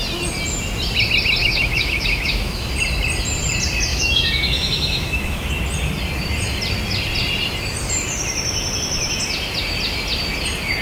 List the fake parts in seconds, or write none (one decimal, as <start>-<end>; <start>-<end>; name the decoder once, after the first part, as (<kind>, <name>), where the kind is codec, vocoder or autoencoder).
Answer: 1.4-2.7 (autoencoder, DAC-VAE); 3.9-5.5